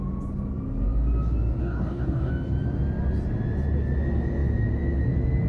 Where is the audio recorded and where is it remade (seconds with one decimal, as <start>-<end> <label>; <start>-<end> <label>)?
0.0-1.6 recorded; 1.6-2.3 remade; 2.3-5.5 recorded